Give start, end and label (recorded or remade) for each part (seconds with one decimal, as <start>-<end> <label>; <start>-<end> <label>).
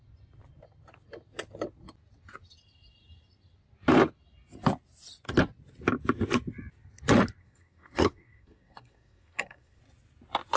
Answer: 0.0-7.4 recorded; 7.4-9.8 remade; 9.8-10.6 recorded